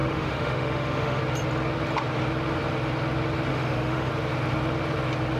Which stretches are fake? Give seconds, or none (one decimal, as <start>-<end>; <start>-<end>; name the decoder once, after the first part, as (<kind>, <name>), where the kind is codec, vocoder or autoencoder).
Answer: 0.0-1.2 (autoencoder, DAC-VAE); 3.5-4.1

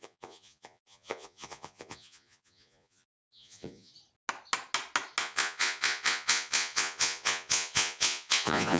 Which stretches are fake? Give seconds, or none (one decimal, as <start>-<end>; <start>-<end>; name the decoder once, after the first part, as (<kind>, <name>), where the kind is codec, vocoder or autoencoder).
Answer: 0.0-3.9 (vocoder, Vocos); 5.2-8.8

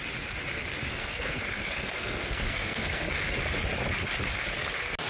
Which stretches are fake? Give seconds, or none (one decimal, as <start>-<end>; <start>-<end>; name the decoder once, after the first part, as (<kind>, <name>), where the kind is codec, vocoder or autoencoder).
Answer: 0.9-3.4 (codec, SNAC)

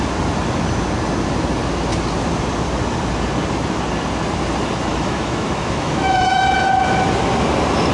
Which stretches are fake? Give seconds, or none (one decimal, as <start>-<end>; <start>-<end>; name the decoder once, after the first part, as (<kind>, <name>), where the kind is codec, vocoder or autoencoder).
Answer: 4.9-6.5 (autoencoder, DAC-VAE)

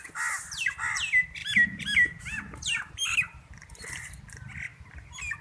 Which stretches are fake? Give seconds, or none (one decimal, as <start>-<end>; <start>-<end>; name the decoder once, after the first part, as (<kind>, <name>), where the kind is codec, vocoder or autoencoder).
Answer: 1.4-3.2 (vocoder, BigVGAN v2)

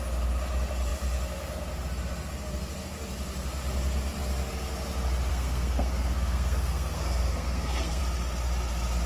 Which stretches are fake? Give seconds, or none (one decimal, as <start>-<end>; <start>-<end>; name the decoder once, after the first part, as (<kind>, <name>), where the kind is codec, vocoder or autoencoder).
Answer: 5.3-8.0 (codec, SNAC)